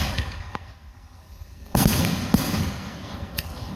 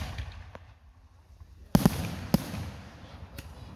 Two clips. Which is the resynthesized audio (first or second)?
first